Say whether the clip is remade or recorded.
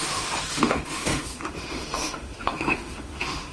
remade